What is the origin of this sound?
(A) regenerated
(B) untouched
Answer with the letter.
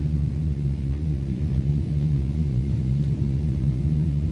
A